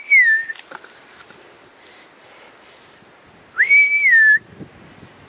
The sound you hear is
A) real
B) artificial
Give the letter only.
A